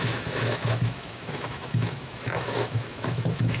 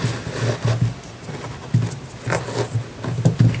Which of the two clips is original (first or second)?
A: second